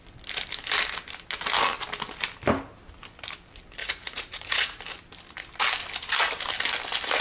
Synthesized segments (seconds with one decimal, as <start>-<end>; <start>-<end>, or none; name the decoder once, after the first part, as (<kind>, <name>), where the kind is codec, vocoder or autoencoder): 3.8-4.8 (vocoder, Vocos)